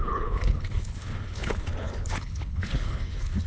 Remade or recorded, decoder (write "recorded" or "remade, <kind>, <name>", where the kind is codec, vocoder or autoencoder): remade, codec, HILCodec